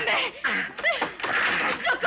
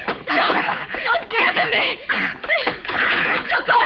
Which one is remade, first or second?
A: second